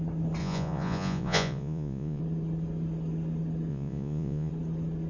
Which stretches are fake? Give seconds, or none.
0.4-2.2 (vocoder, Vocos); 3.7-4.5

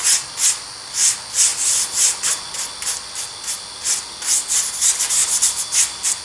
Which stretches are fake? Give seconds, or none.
5.2-5.8 (vocoder, BigVGAN v2)

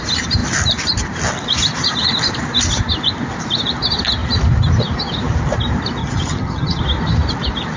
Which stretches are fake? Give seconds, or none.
6.0-6.8 (vocoder, HiFi-GAN)

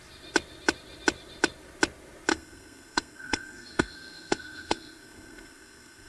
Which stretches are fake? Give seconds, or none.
2.3-6.1 (codec, SNAC)

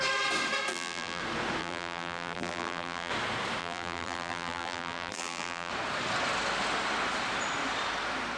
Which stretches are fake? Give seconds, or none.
0.7-1.2 (vocoder, BigVGAN v2); 1.6-3.1; 3.6-5.7